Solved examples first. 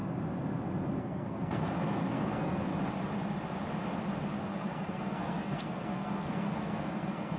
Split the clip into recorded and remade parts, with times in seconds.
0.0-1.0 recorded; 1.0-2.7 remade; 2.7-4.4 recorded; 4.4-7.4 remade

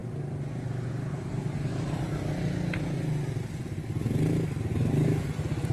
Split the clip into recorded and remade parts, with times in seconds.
0.0-5.7 recorded